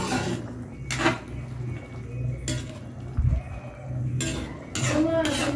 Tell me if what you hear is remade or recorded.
recorded